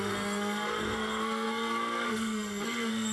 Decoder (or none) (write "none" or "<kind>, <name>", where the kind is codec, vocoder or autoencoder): codec, SNAC